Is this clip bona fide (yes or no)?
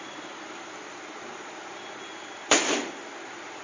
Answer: yes